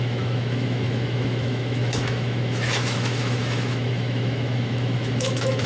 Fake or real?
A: fake